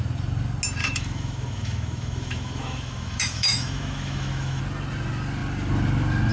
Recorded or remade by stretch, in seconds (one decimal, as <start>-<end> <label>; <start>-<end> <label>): 0.0-0.8 recorded; 0.8-4.6 remade; 4.6-6.3 recorded